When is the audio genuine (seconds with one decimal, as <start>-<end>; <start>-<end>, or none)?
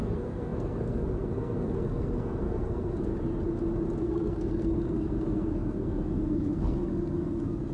3.1-4.0